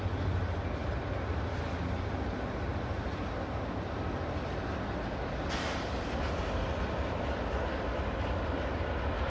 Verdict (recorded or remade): recorded